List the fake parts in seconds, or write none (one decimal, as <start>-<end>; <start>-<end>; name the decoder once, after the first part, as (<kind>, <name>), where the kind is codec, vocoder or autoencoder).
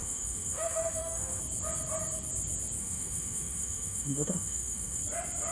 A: 0.0-1.4 (autoencoder, DAC-VAE); 2.8-5.0